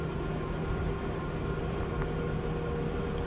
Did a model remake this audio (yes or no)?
no